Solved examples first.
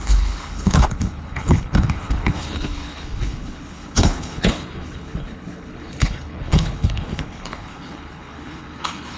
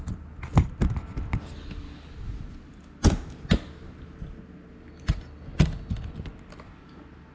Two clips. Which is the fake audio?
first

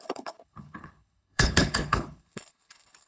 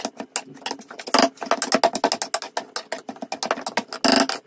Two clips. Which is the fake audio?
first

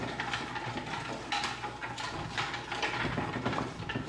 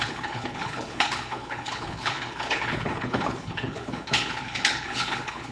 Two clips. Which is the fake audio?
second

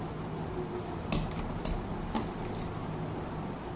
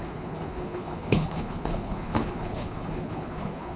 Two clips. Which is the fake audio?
second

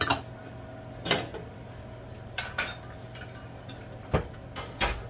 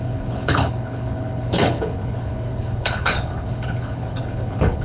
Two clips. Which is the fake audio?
second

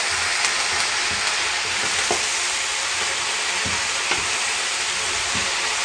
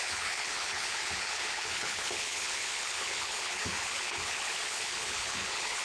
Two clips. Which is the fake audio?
second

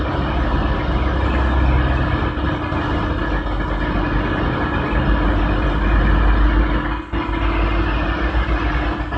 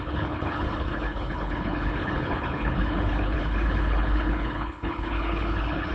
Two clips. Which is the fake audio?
second